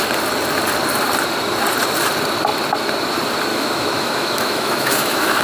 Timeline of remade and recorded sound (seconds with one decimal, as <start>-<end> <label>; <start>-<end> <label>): 0.0-3.5 recorded; 3.5-5.4 remade